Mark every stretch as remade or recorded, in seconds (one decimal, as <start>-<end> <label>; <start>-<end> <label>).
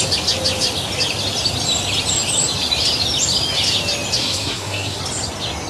0.0-4.2 recorded; 4.2-5.0 remade; 5.0-5.7 recorded